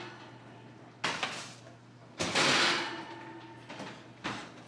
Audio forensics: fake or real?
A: real